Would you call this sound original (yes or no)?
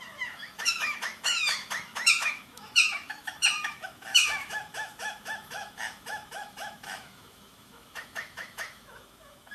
no